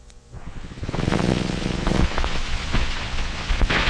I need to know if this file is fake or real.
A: fake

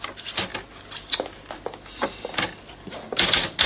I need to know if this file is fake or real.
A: real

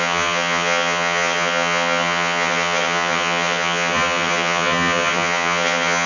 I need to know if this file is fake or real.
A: fake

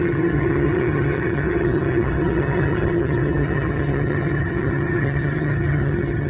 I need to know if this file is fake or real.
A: fake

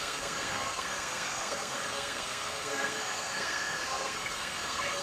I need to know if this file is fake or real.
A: fake